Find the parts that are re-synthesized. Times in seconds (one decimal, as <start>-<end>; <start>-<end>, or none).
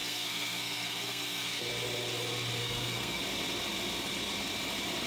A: 0.0-1.7; 2.6-3.2